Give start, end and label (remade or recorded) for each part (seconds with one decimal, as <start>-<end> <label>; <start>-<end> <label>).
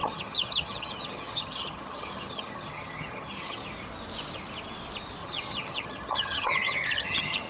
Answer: 0.0-3.7 remade; 3.7-5.2 recorded; 5.2-7.5 remade